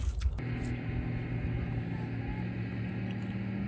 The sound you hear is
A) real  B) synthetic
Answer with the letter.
A